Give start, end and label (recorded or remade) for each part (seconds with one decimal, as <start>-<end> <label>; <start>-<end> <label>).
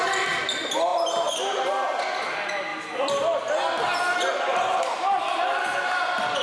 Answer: 0.0-6.4 recorded